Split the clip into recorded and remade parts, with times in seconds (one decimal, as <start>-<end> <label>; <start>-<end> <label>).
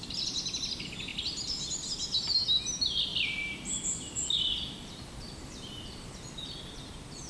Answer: 0.0-1.1 recorded; 1.1-1.7 remade; 1.7-3.1 recorded; 3.1-6.1 remade; 6.1-7.3 recorded